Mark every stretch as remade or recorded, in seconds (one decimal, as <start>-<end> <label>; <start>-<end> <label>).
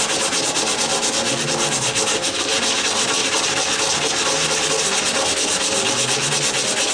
0.0-6.9 recorded